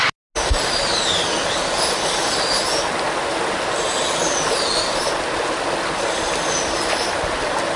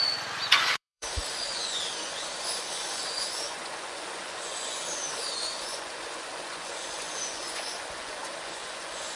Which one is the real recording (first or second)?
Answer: first